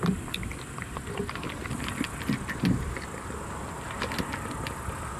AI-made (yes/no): no